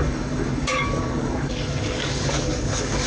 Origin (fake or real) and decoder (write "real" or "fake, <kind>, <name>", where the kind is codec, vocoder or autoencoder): fake, codec, DAC